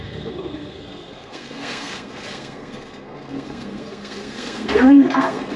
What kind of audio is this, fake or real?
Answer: fake